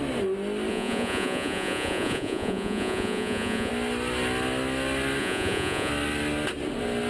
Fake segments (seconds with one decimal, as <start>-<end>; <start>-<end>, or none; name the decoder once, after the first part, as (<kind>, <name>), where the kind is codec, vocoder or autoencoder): 0.7-3.7 (vocoder, Vocos); 5.2-5.9